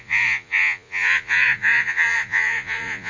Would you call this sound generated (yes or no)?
yes